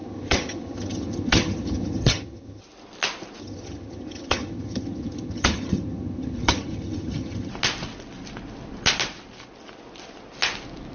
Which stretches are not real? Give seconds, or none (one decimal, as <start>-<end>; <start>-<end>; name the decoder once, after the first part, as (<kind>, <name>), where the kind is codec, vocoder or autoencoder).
0.0-2.6 (vocoder, HiFi-GAN); 3.4-7.5